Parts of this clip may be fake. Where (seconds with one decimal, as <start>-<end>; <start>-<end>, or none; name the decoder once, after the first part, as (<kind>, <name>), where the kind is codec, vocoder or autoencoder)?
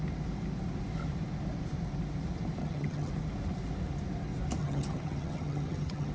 2.6-3.1 (vocoder, HiFi-GAN); 4.6-6.1